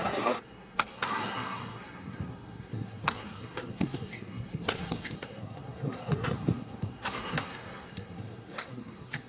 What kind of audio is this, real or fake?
fake